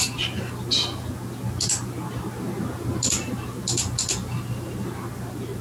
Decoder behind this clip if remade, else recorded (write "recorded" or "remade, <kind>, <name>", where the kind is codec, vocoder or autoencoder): recorded